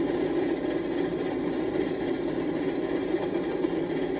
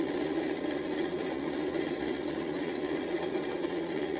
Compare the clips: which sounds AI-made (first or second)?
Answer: second